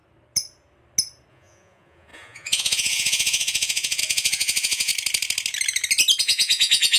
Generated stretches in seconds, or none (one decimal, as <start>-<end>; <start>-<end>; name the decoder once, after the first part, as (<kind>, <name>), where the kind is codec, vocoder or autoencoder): 1.3-4.9 (vocoder, Vocos); 6.2-7.0

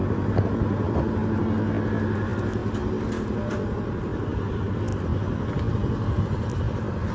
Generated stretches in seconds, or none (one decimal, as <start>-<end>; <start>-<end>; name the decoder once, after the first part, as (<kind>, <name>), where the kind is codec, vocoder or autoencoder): none

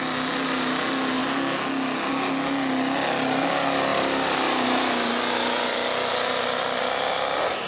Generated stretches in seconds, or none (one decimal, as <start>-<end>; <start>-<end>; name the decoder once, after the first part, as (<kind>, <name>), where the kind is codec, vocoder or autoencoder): none

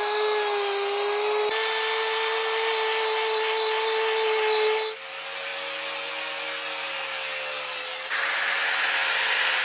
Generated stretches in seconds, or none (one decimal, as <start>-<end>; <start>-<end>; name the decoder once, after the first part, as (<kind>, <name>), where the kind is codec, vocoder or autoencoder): none

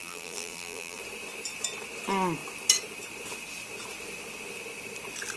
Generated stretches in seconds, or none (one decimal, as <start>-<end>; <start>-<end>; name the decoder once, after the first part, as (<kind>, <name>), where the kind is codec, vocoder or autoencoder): 0.0-1.0 (vocoder, BigVGAN v2)

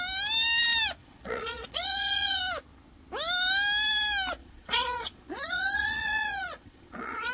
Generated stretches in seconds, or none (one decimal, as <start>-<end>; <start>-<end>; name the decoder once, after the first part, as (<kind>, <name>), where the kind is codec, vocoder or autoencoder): 1.0-2.4 (vocoder, Vocos); 4.4-7.3